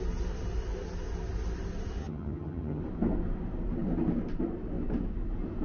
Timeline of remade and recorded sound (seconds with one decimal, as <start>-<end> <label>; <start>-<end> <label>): 0.0-2.0 recorded; 2.0-2.8 remade; 2.8-5.6 recorded